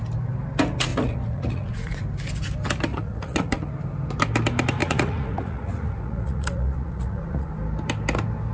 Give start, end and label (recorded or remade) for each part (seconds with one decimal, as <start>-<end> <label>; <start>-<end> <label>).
0.0-0.9 recorded; 0.9-2.0 remade; 2.0-2.9 recorded; 2.9-3.7 remade; 3.7-4.8 recorded; 4.8-7.5 remade; 7.5-8.5 recorded